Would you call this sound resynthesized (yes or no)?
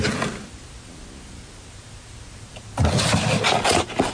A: no